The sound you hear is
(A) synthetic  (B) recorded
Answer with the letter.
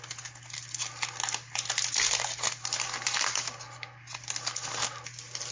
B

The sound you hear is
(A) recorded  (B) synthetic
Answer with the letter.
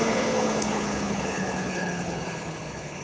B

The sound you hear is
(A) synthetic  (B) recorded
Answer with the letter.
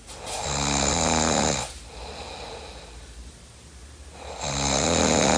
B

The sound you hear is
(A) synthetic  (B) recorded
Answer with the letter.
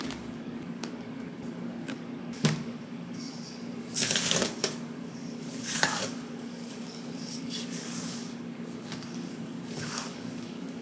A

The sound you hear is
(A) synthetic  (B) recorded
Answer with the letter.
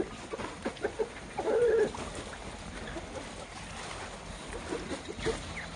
B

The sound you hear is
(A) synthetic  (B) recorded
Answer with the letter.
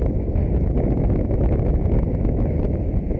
A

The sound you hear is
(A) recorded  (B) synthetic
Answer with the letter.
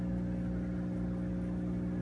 A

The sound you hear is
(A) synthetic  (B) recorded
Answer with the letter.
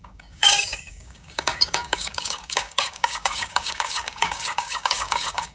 A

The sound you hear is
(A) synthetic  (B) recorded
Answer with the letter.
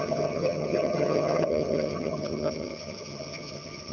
A